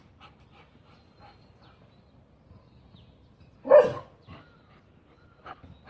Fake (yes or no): no